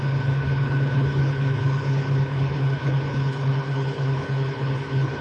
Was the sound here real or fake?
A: fake